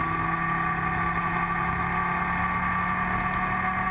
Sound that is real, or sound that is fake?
real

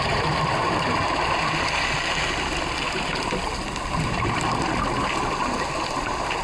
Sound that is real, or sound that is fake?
real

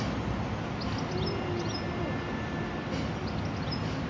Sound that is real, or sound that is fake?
real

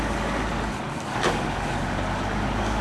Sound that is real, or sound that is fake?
fake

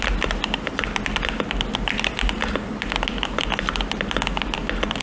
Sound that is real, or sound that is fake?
real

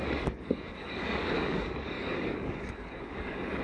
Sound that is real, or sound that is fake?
fake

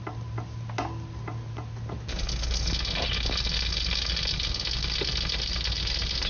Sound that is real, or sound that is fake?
real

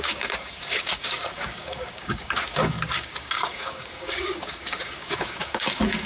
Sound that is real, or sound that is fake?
fake